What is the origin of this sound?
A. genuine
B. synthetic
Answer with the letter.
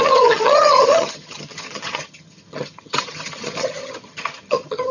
B